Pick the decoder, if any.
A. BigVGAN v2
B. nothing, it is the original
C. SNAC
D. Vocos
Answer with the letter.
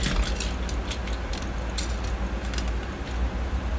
B